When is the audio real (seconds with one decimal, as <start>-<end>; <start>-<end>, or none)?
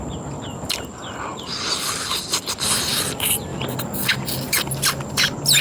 0.0-5.6